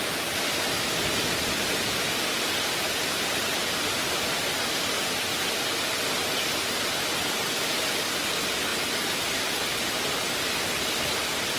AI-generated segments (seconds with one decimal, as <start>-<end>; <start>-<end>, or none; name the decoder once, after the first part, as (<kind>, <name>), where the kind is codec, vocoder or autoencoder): none